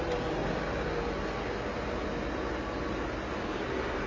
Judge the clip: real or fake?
real